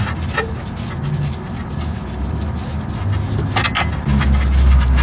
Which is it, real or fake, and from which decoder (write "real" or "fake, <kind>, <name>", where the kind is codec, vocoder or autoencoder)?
real